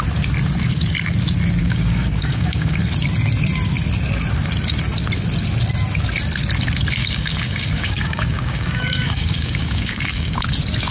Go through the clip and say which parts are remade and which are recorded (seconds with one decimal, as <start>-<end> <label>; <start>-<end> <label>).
0.0-1.6 recorded; 1.6-2.8 remade; 2.8-7.0 recorded; 7.0-10.4 remade; 10.4-10.9 recorded